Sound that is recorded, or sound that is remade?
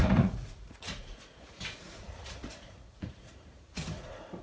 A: remade